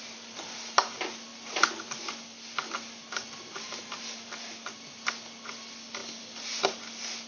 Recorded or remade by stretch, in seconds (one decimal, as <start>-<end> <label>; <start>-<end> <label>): 0.0-7.3 recorded